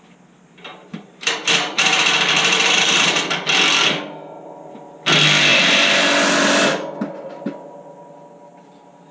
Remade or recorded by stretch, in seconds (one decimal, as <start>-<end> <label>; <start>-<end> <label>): 0.0-0.7 recorded; 0.7-3.2 remade; 3.2-9.1 recorded